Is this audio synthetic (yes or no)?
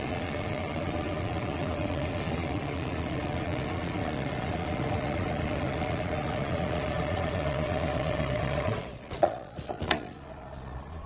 yes